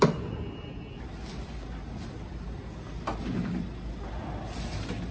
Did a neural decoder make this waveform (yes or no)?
no